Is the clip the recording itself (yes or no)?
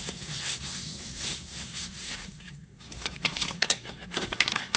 no